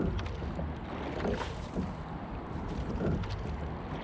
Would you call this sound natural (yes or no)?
yes